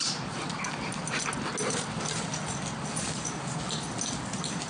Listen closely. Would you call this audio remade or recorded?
recorded